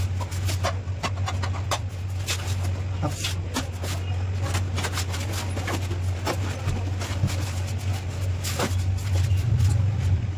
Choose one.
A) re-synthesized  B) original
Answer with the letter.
B